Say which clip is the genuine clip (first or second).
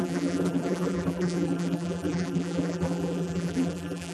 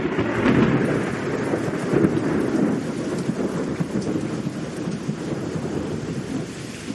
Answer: second